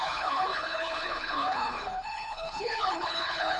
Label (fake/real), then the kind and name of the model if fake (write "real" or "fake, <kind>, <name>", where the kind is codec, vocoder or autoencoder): fake, codec, HILCodec